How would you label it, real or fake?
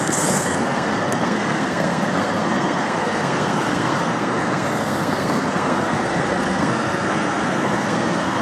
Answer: fake